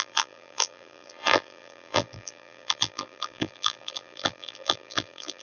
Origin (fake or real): fake